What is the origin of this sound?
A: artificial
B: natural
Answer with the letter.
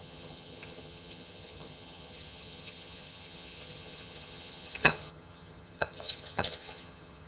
A